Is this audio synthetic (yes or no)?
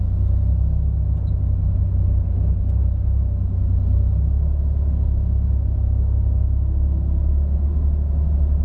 no